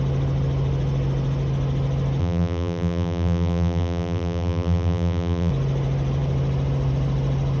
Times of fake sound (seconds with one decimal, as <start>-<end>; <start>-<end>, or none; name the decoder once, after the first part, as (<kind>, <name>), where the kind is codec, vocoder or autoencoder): 2.2-5.5 (vocoder, BigVGAN v2)